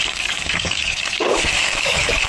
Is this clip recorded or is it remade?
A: remade